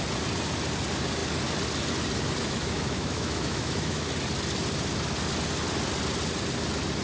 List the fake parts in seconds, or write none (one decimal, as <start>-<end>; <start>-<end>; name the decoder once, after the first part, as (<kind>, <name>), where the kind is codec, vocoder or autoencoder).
2.4-4.1 (autoencoder, DAC-VAE)